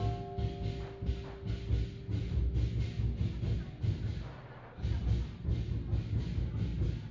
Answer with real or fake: real